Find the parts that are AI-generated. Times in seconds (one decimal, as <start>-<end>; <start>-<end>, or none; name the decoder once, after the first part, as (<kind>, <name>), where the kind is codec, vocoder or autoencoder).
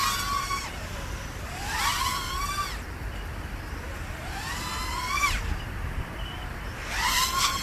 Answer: none